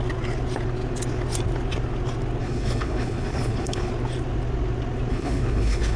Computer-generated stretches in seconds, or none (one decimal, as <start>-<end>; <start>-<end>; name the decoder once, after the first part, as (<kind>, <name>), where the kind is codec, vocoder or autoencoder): 2.4-3.9 (codec, HILCodec); 5.1-6.0